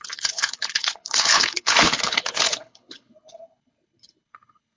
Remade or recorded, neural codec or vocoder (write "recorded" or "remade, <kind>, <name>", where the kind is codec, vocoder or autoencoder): remade, codec, HILCodec